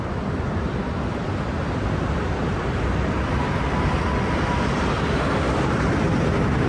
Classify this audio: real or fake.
fake